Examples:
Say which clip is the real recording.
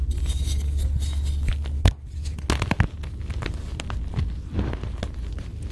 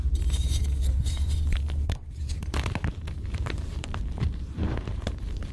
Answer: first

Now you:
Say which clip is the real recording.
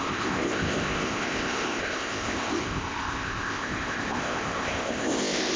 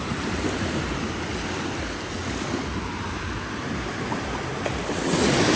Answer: second